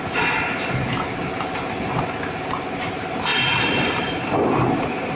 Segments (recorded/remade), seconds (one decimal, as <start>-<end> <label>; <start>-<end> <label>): 0.0-5.1 recorded